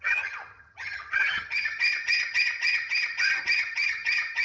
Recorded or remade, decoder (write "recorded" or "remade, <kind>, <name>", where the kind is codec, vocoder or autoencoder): remade, vocoder, HiFi-GAN